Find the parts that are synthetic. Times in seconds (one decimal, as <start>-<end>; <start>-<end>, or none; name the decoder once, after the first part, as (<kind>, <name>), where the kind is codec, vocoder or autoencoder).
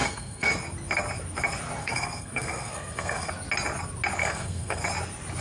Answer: 0.0-0.5 (codec, SNAC); 1.8-3.3; 4.2-4.8